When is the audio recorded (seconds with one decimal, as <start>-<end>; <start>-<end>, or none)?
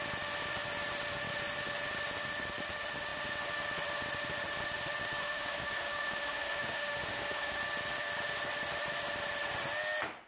0.0-5.2; 7.6-10.3